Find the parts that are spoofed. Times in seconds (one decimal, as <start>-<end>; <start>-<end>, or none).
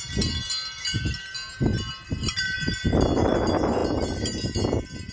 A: none